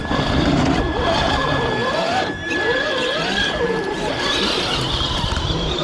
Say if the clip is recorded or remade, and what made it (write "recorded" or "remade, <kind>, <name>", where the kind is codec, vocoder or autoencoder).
remade, vocoder, BigVGAN v2